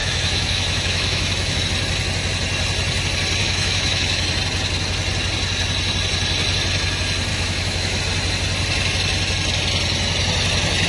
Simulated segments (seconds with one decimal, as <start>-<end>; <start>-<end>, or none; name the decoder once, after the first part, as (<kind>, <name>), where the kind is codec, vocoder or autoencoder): 0.0-1.6 (autoencoder, DAC-VAE); 3.4-4.3; 7.3-8.0